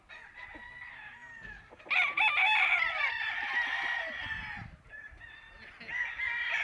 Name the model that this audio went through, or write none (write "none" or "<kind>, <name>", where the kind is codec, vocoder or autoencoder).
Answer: none